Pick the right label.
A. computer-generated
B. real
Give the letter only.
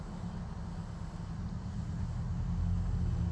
B